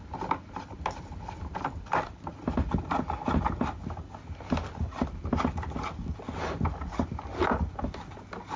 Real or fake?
real